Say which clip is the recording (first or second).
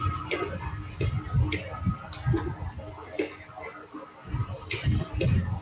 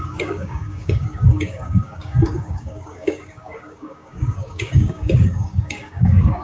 first